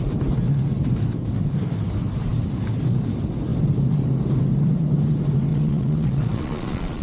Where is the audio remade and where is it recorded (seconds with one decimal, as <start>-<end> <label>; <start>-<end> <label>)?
0.0-5.5 recorded; 5.5-7.0 remade